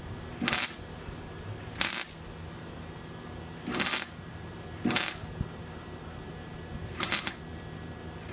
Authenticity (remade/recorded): recorded